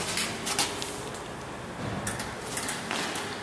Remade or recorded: recorded